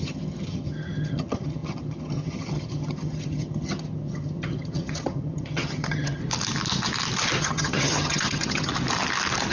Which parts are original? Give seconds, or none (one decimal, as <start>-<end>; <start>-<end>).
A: 6.2-7.4; 8.7-9.5